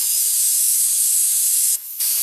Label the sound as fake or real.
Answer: fake